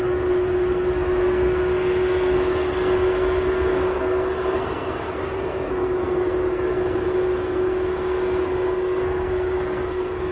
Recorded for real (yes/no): no